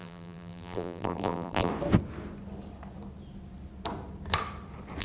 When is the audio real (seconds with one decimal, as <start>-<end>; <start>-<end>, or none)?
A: 1.7-5.0